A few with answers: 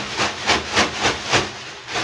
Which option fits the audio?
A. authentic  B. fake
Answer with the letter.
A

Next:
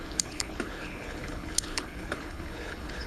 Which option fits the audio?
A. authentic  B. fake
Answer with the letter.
B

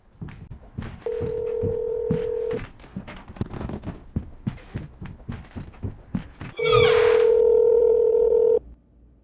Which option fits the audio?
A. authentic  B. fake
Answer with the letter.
A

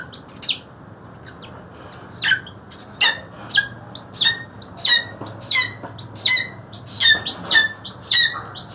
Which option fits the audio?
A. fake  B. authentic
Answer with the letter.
B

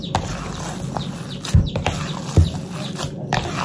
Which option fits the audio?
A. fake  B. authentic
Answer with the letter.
B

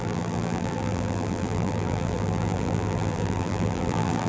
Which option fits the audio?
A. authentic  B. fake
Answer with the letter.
B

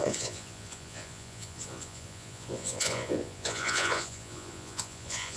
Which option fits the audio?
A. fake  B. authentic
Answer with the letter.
A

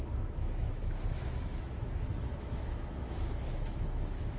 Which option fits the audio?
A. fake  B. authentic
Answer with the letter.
A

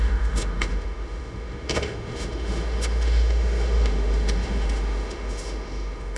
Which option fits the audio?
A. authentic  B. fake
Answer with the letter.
B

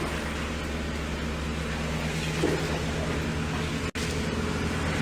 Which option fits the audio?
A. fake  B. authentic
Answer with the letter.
B